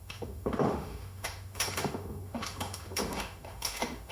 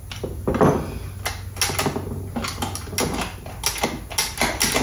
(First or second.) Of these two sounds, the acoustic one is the second